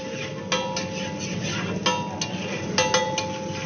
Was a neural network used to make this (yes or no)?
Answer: no